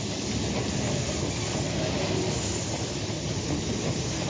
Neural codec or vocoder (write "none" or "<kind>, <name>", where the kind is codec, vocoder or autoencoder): none